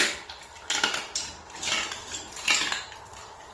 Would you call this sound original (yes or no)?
yes